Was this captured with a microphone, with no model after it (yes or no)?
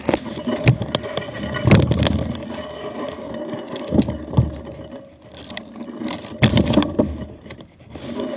yes